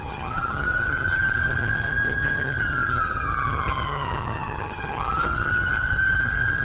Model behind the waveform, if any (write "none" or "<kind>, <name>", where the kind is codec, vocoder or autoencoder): vocoder, HiFi-GAN